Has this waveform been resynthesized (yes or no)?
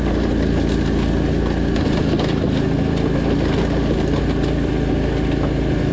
no